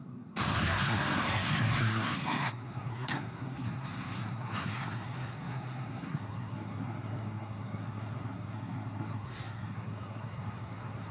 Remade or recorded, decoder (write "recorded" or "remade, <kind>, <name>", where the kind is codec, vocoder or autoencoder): remade, codec, SNAC